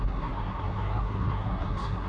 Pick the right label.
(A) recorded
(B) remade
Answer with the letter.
B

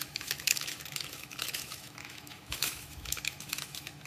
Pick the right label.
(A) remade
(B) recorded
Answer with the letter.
A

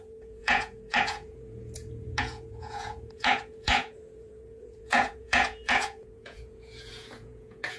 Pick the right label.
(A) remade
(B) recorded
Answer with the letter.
A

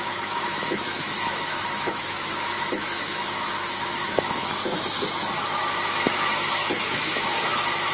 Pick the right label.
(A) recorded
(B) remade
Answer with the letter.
B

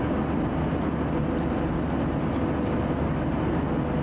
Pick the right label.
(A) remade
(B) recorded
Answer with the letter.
B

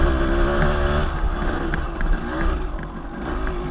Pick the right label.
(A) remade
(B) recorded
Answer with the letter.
B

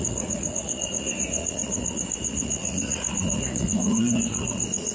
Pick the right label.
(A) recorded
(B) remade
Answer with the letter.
B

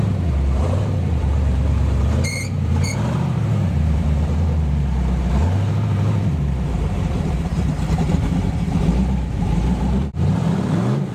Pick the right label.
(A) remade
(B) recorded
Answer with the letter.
A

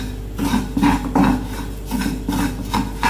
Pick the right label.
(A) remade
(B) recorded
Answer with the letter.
B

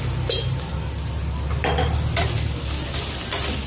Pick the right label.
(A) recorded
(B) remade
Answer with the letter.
A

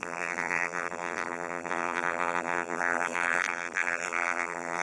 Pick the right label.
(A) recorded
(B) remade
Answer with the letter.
B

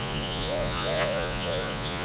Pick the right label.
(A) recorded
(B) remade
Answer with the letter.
B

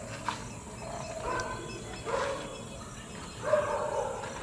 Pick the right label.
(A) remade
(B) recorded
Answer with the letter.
B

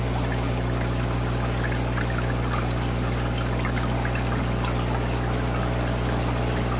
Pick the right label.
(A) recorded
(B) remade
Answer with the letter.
A